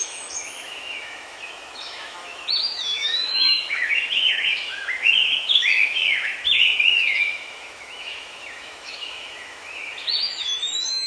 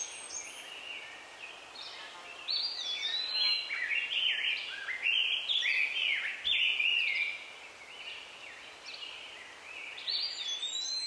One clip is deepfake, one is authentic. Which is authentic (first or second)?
second